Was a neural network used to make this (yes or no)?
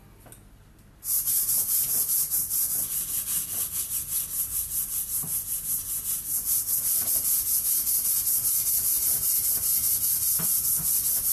no